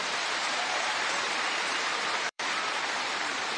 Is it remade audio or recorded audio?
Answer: remade